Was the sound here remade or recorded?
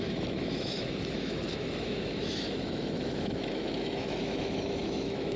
remade